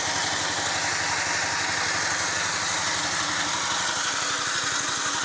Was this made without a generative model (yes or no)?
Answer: yes